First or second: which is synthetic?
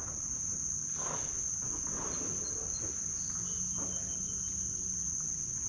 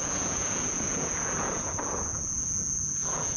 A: second